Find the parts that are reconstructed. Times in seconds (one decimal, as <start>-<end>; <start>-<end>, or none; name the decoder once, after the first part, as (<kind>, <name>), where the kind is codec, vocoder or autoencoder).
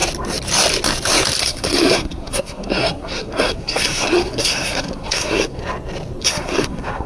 1.4-5.6 (codec, SNAC); 6.2-7.1